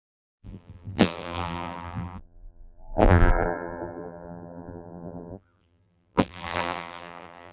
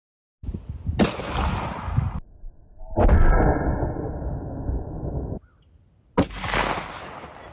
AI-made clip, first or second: first